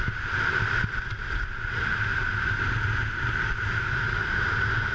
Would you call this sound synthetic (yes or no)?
no